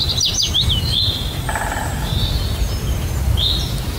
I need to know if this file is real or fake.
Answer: real